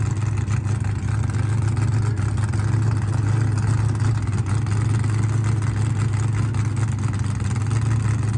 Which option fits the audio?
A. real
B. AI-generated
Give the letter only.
A